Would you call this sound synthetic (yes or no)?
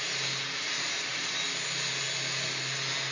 no